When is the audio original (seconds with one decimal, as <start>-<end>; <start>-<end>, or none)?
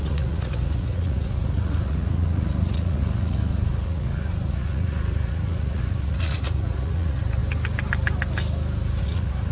7.4-9.0